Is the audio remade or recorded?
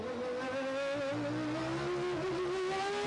recorded